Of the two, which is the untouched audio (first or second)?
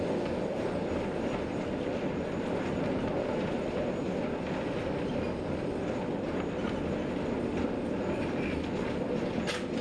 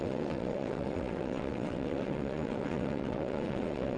first